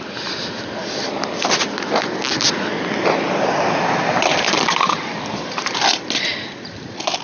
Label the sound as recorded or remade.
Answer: remade